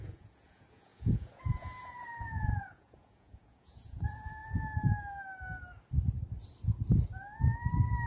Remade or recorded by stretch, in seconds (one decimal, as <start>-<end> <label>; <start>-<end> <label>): 0.0-4.4 remade; 4.4-8.1 recorded